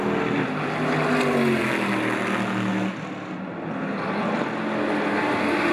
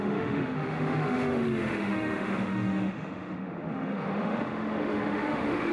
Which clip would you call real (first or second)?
first